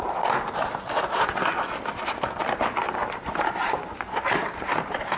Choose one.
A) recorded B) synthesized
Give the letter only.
A